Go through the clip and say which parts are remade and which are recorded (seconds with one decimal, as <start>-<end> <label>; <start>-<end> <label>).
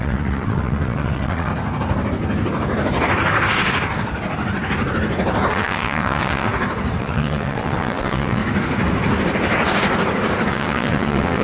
0.0-1.5 remade; 1.5-5.5 recorded; 5.5-6.5 remade; 6.5-7.0 recorded; 7.0-8.4 remade; 8.4-10.5 recorded; 10.5-11.4 remade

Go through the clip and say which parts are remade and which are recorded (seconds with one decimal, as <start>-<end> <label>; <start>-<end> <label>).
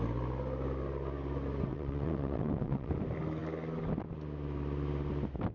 0.0-1.7 recorded; 1.7-2.9 remade; 2.9-5.5 recorded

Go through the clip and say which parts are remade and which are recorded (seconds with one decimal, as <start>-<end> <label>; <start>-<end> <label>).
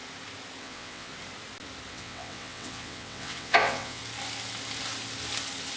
0.0-0.6 recorded; 0.6-1.1 remade; 1.1-1.9 recorded; 1.9-4.0 remade; 4.0-5.8 recorded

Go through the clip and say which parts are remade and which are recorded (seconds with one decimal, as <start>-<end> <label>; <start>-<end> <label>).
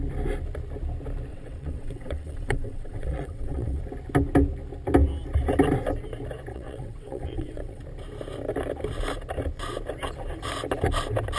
0.0-1.3 recorded; 1.3-3.8 remade; 3.8-6.5 recorded; 6.5-7.8 remade; 7.8-11.4 recorded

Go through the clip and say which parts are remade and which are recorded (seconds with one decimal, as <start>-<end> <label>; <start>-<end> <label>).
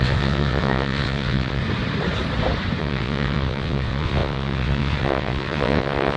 0.0-1.6 remade; 1.6-2.8 recorded; 2.8-6.2 remade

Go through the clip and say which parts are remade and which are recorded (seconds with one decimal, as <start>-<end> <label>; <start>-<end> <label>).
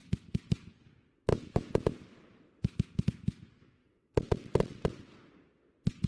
0.0-3.8 recorded; 3.8-5.3 remade; 5.3-6.1 recorded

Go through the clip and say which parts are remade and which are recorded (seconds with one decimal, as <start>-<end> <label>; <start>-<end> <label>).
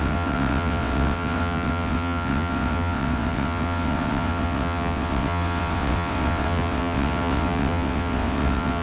0.0-8.8 remade